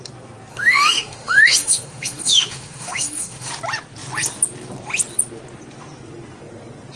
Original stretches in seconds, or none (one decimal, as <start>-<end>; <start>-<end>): 0.0-0.5; 3.5-7.0